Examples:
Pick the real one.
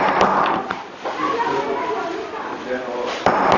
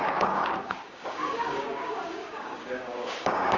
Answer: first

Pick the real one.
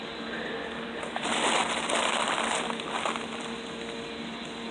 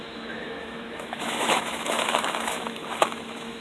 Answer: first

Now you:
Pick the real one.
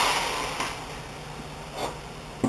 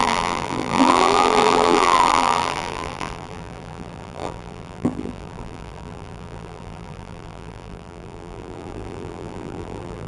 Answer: first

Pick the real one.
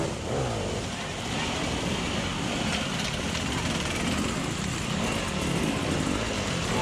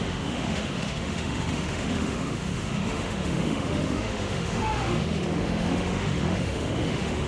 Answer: first